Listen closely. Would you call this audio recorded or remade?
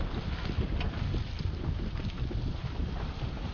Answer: recorded